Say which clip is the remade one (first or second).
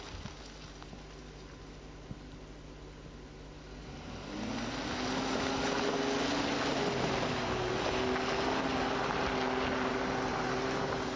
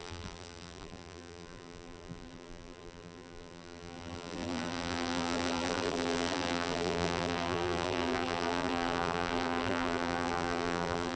second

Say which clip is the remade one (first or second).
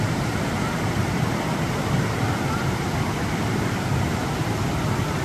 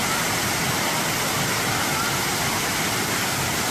first